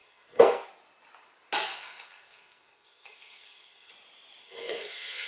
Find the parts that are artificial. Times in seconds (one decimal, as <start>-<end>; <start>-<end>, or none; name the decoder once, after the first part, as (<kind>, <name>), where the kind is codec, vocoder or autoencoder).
0.0-0.7 (codec, SNAC); 1.6-3.9; 4.4-5.3